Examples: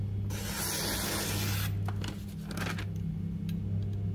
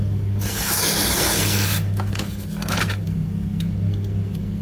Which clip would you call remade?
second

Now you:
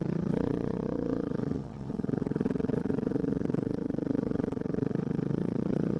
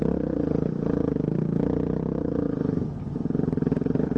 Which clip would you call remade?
first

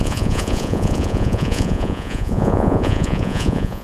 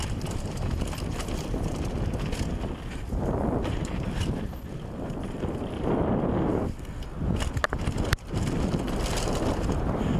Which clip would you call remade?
first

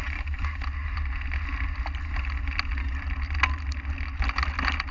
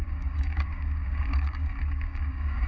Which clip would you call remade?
second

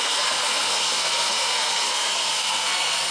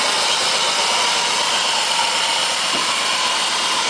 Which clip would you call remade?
first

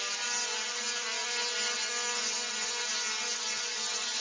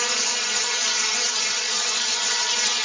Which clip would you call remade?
second